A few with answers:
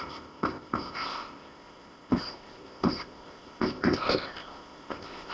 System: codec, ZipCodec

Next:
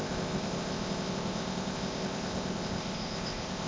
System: codec, ZipCodec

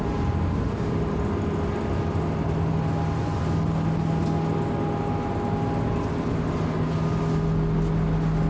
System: none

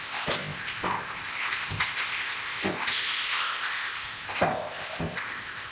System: codec, ZipCodec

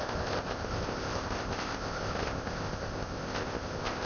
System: codec, ZipCodec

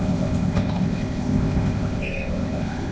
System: codec, ZipCodec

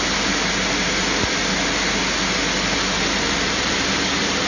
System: none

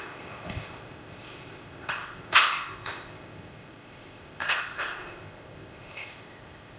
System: codec, ZipCodec